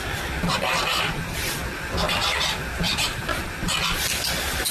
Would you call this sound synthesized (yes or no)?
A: yes